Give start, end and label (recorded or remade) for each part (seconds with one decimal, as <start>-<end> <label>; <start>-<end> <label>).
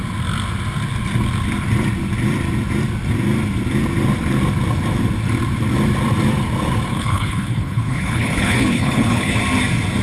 0.0-6.9 recorded; 6.9-9.4 remade; 9.4-10.0 recorded